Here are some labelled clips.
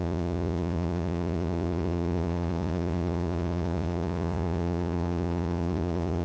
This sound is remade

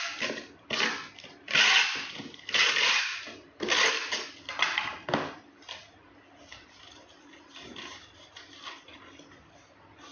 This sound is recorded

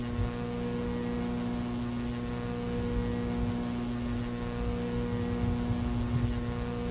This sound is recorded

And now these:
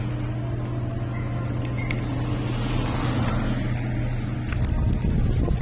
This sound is recorded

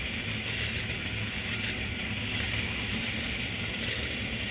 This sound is recorded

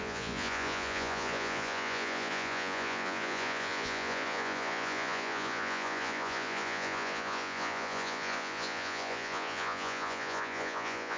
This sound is remade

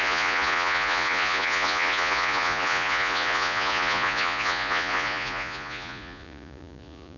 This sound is remade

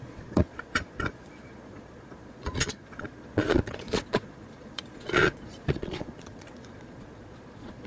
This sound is remade